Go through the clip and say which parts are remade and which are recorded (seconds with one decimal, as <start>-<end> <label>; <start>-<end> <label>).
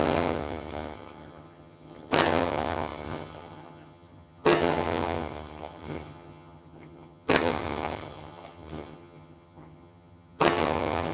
0.0-11.1 remade